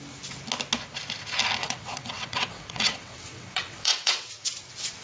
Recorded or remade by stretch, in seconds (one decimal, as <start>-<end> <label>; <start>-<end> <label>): 0.0-1.6 recorded; 1.6-4.3 remade; 4.3-5.0 recorded